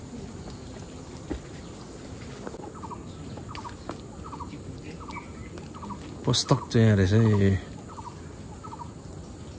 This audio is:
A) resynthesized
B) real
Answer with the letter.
B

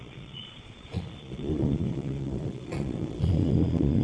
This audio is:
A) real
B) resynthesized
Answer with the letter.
B